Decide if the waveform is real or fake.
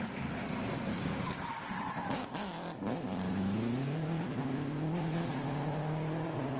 real